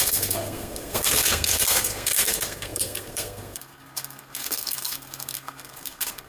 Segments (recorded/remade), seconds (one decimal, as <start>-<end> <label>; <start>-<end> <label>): 0.0-6.3 remade